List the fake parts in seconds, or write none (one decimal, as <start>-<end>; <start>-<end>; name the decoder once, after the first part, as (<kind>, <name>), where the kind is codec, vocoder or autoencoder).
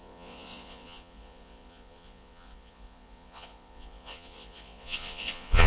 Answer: 0.0-5.7 (vocoder, Vocos)